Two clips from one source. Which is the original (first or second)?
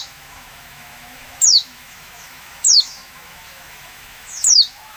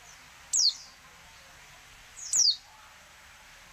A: second